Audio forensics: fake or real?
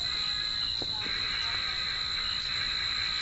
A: real